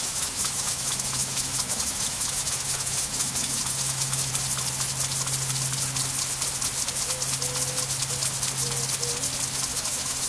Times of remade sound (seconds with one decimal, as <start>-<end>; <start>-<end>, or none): 0.0-4.3; 9.7-10.3